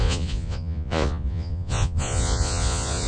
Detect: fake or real fake